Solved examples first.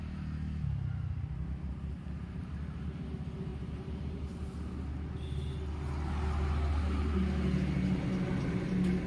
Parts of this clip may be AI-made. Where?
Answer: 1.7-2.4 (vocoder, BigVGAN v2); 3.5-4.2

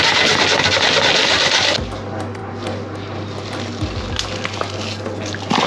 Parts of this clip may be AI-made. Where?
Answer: 1.2-1.8 (vocoder, BigVGAN v2)

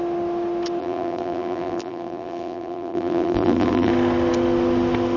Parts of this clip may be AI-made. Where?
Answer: 0.8-3.9 (vocoder, BigVGAN v2)

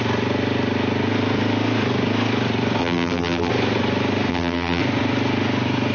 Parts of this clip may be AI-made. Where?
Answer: 2.8-3.5 (vocoder, BigVGAN v2); 4.3-4.8

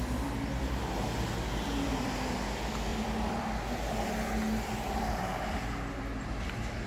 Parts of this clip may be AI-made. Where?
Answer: 2.9-5.2 (vocoder, BigVGAN v2)